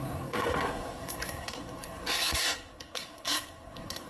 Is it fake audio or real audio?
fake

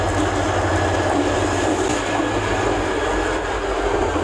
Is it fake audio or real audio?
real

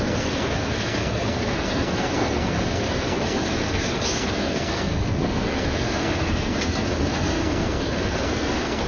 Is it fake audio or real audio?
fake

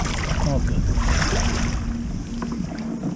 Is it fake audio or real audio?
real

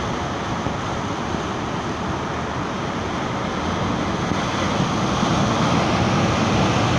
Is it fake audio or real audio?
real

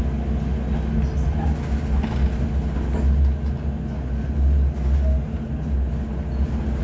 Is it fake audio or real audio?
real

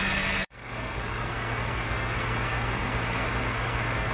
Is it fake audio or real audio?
fake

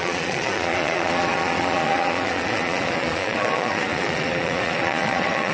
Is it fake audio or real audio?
fake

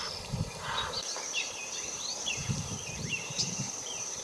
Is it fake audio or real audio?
fake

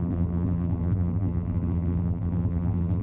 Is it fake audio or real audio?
fake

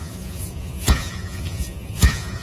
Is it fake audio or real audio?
fake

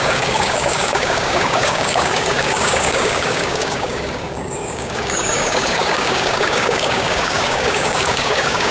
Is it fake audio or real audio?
fake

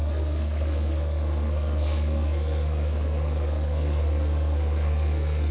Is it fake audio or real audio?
fake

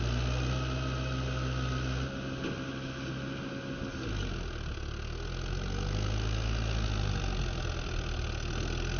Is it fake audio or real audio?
real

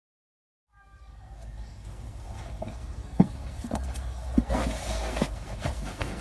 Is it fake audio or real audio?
fake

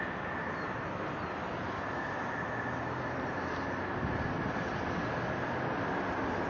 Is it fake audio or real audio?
real